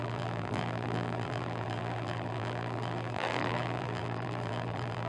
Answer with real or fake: fake